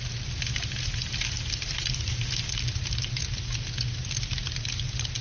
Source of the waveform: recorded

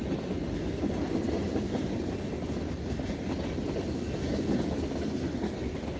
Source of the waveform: recorded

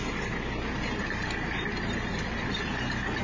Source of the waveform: recorded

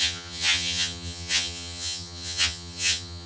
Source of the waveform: remade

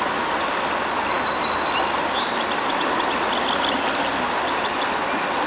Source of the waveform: recorded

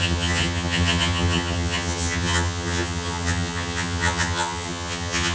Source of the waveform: remade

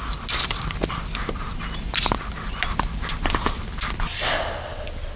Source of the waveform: recorded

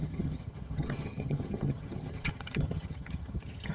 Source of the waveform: remade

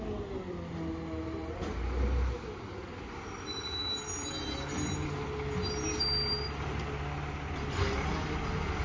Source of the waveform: recorded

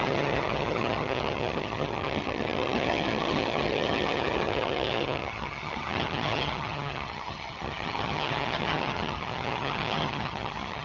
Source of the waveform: remade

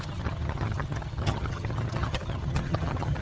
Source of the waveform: remade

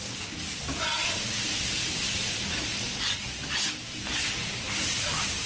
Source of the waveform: recorded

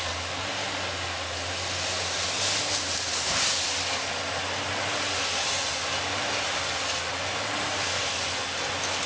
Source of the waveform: recorded